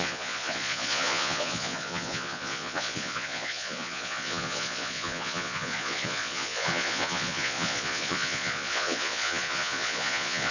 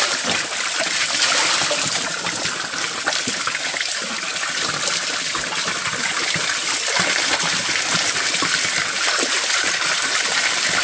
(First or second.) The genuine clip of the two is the second